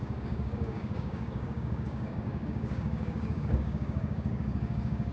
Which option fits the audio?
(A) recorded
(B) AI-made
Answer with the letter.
B